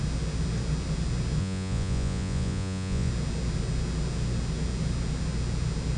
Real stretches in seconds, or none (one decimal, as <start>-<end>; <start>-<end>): 0.0-1.4; 3.1-6.0